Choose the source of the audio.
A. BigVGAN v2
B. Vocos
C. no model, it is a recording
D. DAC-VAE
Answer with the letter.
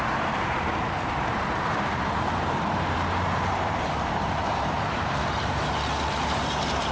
A